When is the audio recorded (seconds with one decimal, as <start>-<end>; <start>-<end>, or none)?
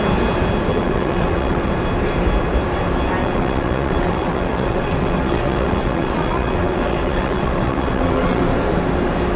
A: 0.0-0.7; 1.7-3.2; 8.4-9.4